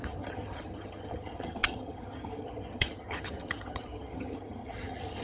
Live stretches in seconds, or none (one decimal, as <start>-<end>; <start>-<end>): none